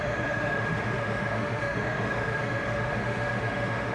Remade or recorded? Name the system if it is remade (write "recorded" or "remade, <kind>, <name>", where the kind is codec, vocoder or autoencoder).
remade, autoencoder, DAC-VAE